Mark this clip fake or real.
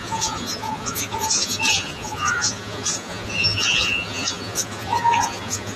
fake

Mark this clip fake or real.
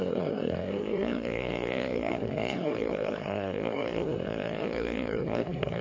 fake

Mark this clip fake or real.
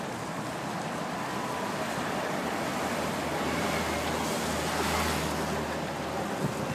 real